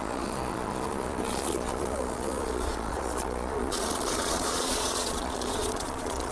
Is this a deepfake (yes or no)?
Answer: yes